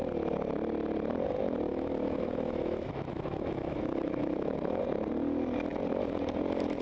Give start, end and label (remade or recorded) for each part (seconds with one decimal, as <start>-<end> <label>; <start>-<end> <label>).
0.0-1.7 recorded; 1.7-4.8 remade; 4.8-6.8 recorded